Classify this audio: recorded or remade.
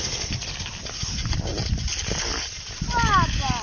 recorded